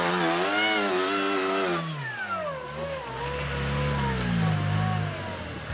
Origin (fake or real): real